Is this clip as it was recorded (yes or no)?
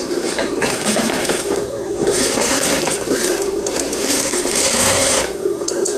no